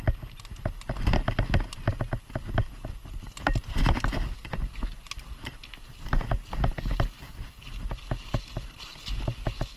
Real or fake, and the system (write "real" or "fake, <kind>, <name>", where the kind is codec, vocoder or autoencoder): real